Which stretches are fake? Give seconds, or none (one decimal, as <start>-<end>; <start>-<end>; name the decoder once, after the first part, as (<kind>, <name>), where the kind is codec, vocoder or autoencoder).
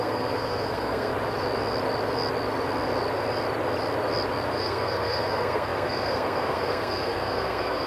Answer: 0.0-1.1 (codec, SNAC); 4.6-7.9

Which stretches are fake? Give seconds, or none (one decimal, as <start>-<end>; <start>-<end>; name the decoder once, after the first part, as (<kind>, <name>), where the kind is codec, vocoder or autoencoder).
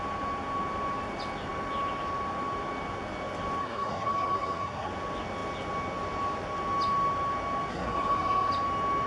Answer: 3.6-4.9 (codec, SNAC); 7.7-8.5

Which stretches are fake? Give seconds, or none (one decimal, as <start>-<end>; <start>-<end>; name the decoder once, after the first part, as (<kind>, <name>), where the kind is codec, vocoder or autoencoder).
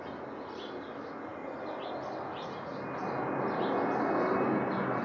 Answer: none